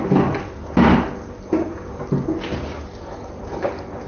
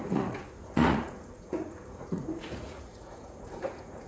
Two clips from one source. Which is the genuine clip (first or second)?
first